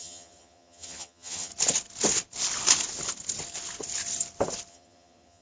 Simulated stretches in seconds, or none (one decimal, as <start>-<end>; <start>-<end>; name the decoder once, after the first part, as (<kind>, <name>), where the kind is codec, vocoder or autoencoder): 0.0-1.5 (vocoder, HiFi-GAN); 4.7-5.4